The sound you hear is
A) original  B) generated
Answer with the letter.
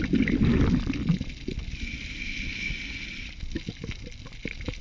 A